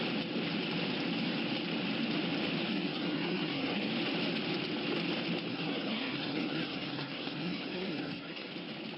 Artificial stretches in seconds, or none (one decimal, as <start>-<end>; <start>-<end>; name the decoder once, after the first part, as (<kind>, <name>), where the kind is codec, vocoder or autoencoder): 2.7-3.9 (codec, SNAC); 5.5-8.5